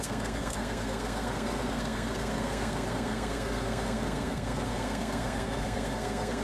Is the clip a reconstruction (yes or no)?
yes